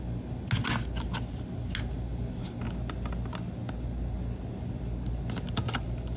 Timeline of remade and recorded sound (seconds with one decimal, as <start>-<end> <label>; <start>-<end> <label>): 0.0-6.2 recorded